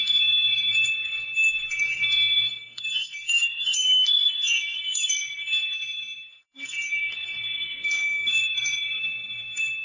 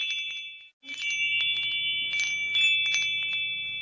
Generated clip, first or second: first